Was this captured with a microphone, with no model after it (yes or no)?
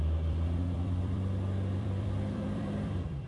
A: no